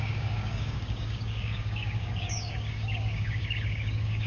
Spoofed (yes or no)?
yes